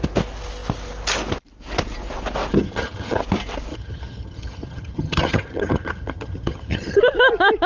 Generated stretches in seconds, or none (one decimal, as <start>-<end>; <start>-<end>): 2.5-3.2; 3.7-7.0